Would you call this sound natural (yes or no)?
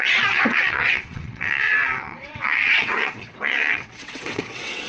no